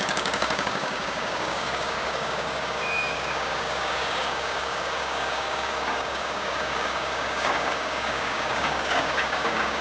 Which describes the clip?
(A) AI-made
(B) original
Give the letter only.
A